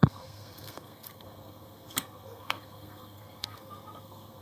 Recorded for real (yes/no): no